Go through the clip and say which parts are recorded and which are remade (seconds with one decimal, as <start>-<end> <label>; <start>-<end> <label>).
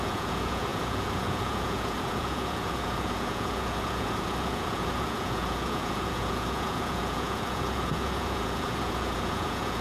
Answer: 0.0-9.8 remade